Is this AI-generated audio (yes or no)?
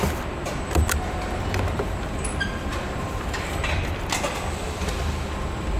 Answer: no